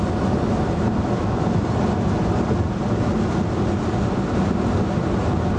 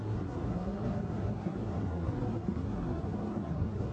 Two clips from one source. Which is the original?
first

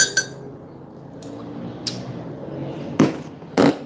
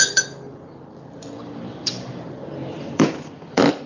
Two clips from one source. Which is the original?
first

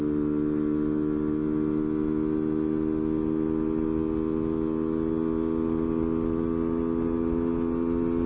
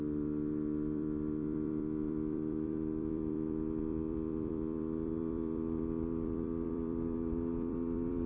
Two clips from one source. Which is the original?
first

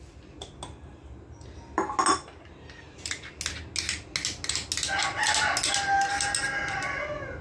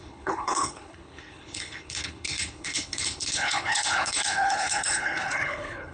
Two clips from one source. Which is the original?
first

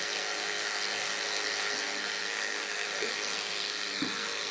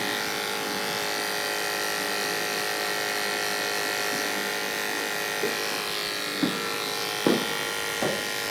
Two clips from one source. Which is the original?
second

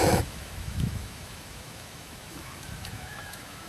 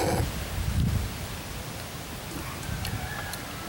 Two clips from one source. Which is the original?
second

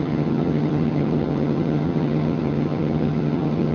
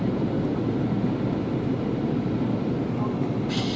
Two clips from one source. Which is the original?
second